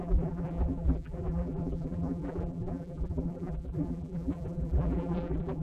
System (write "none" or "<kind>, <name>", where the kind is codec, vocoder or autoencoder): vocoder, BigVGAN v2